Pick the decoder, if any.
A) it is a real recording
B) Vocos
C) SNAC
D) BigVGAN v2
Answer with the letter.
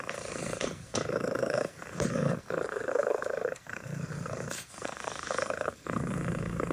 C